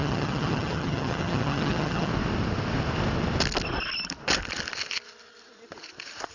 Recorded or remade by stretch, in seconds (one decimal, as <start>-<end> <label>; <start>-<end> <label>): 0.0-2.1 remade; 2.1-6.3 recorded